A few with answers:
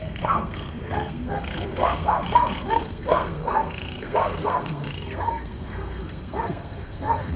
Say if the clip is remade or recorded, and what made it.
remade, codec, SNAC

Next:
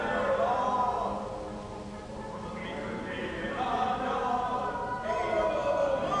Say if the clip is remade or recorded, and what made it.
recorded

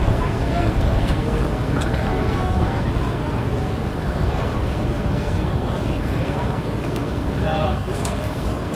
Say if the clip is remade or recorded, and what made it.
remade, codec, SNAC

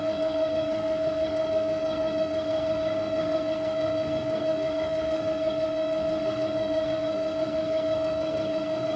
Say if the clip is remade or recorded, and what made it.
remade, codec, SNAC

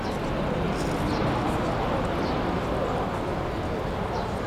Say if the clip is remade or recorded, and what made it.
recorded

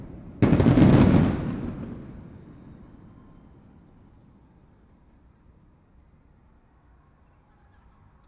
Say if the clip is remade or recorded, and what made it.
recorded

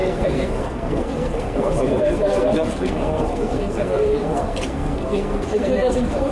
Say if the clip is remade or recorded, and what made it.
remade, codec, SNAC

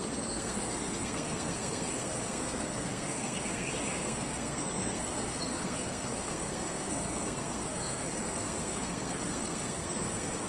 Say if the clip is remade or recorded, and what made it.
remade, codec, SNAC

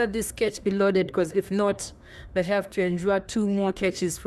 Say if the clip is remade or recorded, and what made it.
remade, codec, SNAC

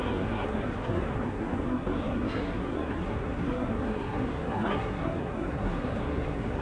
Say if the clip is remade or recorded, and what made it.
remade, codec, SNAC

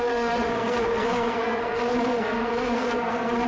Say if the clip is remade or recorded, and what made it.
remade, codec, SNAC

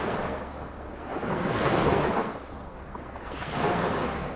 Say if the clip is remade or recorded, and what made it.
remade, codec, SNAC